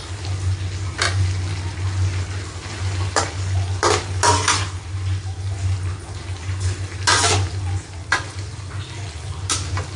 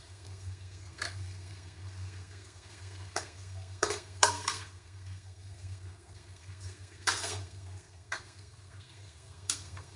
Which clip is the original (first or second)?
first